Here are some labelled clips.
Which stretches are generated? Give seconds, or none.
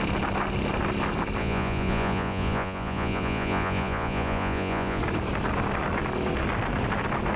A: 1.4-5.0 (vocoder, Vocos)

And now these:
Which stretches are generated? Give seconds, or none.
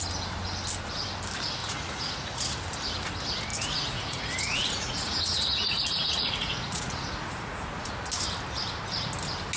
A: 1.6-2.6 (vocoder, Vocos); 3.5-7.9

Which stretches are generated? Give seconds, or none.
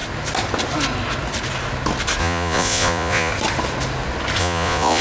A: 2.2-3.3 (vocoder, Vocos); 4.4-5.0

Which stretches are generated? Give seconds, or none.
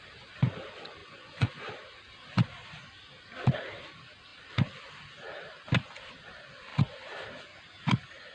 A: 1.0-1.7 (vocoder, Vocos)